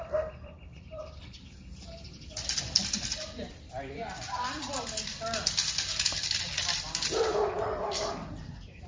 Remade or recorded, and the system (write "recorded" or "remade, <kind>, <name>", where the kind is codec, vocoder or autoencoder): remade, vocoder, BigVGAN v2